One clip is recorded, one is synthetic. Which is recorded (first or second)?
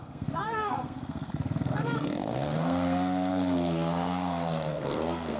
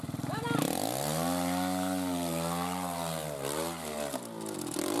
second